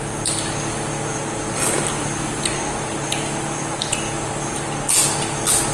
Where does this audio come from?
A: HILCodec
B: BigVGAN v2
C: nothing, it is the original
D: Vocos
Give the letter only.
C